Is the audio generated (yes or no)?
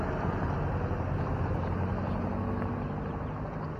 no